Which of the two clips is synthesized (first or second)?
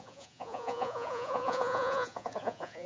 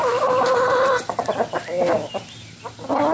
first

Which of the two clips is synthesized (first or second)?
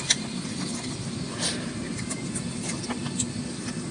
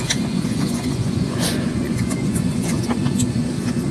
second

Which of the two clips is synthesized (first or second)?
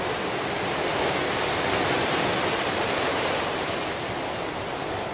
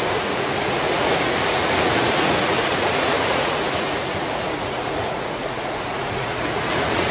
second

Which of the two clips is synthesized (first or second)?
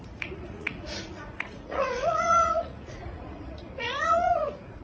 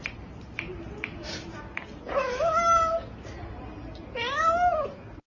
first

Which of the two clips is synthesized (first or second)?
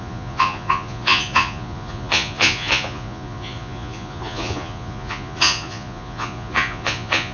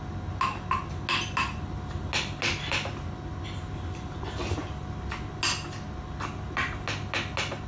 first